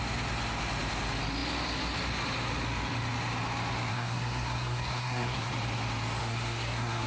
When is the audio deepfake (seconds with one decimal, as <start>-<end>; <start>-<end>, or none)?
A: 3.9-5.5; 6.2-7.1